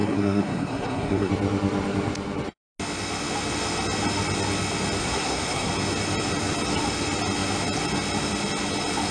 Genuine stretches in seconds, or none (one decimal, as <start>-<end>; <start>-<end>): 1.3-5.0; 5.7-9.1